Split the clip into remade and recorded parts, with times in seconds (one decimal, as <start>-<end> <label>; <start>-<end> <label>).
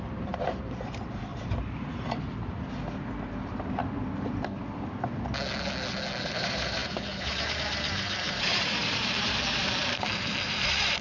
0.0-1.3 remade; 1.3-3.4 recorded; 3.4-3.8 remade; 3.8-6.2 recorded; 6.2-11.0 remade